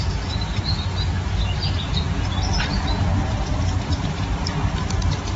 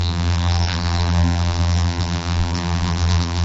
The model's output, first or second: second